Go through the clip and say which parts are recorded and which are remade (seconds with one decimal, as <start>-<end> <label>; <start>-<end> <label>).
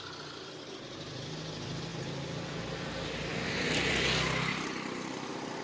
0.0-5.6 recorded